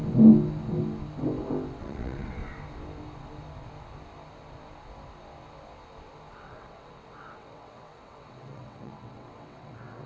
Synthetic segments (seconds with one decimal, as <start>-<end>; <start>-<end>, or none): 1.8-2.4; 6.3-10.1